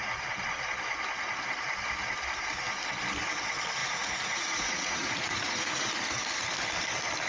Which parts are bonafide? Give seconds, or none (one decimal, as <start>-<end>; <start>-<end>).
0.0-3.8; 5.9-7.3